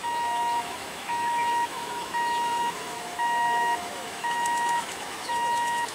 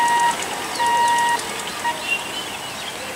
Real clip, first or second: second